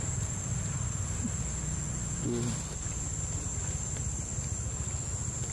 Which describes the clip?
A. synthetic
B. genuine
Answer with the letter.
B